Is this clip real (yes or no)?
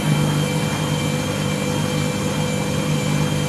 yes